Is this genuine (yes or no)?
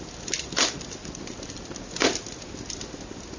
yes